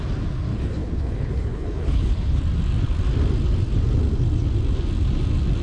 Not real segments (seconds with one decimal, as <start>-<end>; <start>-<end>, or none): 0.5-2.4